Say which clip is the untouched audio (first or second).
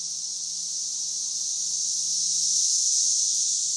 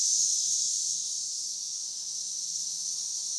first